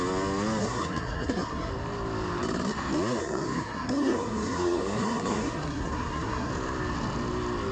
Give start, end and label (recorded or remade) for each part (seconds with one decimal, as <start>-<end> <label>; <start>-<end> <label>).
0.0-0.6 recorded; 0.6-1.7 remade; 1.7-3.2 recorded; 3.2-6.5 remade; 6.5-7.7 recorded